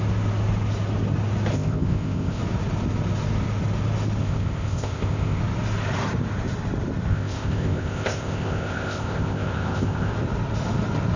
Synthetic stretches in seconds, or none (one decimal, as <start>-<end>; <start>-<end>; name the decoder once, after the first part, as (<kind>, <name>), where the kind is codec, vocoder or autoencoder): 1.5-2.4 (codec, ZipCodec); 4.2-5.4; 7.1-10.1